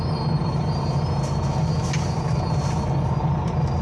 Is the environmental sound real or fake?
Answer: real